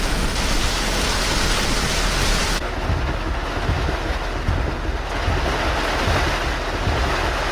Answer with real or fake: real